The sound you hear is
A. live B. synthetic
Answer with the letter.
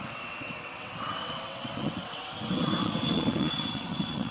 B